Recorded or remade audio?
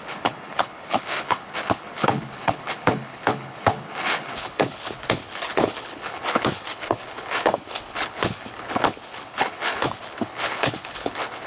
remade